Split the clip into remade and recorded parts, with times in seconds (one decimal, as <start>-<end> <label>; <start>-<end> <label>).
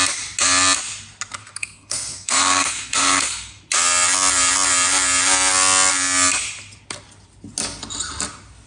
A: 0.0-1.4 recorded; 1.4-3.6 remade; 3.6-8.7 recorded